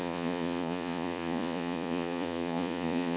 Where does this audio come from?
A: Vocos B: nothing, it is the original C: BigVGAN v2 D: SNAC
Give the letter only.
A